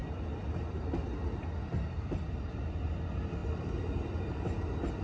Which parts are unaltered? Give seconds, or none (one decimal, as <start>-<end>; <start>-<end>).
0.0-5.0